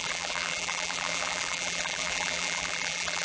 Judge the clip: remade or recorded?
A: remade